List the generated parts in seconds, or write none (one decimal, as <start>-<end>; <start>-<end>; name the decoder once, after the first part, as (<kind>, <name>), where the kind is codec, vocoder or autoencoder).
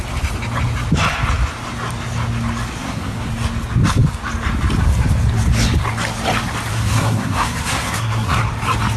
2.8-3.3 (codec, SNAC); 6.7-8.4